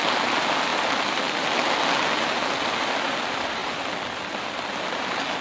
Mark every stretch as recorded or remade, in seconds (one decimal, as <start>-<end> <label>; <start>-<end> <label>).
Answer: 0.0-5.4 recorded